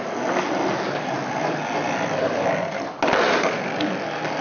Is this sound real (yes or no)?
yes